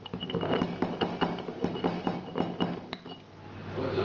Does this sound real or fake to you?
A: real